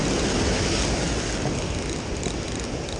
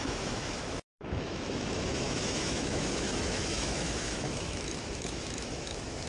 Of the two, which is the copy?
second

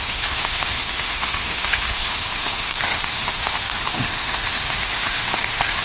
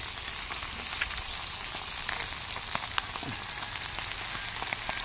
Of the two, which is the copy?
first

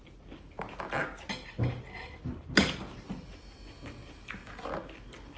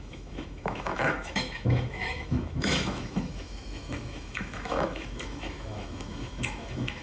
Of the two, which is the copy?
second